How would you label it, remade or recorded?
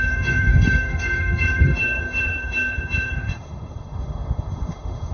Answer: remade